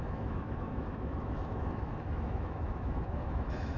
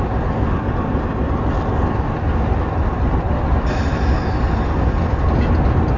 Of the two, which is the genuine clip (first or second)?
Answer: second